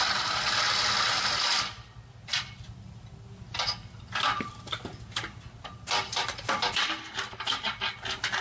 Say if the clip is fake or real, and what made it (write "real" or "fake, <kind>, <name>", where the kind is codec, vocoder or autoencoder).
real